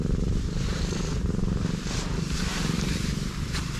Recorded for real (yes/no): no